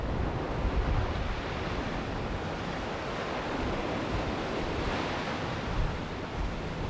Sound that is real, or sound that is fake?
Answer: real